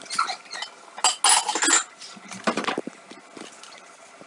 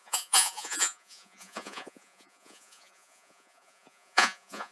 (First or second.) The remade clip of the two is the second